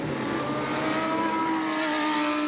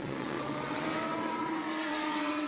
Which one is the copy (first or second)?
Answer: second